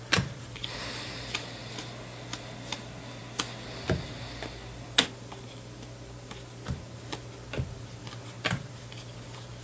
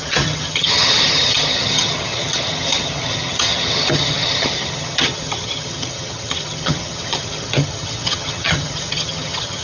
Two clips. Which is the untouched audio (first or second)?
first